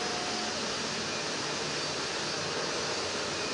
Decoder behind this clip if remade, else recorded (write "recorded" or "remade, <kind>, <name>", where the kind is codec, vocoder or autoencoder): remade, vocoder, BigVGAN v2